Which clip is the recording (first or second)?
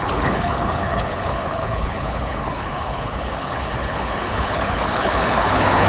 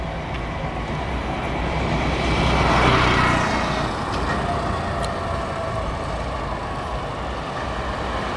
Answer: second